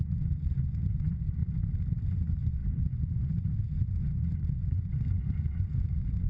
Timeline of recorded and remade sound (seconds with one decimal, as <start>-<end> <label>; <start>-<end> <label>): 0.0-1.4 remade; 1.4-2.1 recorded; 2.1-6.3 remade